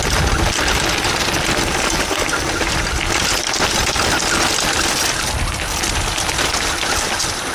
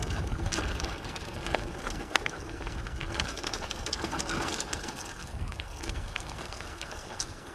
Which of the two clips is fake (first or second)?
second